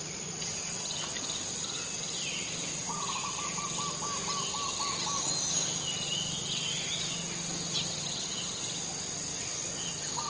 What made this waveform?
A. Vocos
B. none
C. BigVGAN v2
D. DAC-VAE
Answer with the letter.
B